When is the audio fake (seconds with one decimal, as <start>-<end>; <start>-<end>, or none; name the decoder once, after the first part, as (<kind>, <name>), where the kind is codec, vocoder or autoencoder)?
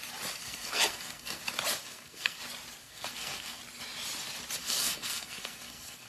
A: 0.4-1.4 (codec, SNAC); 1.8-2.4; 2.8-3.6; 4.6-6.1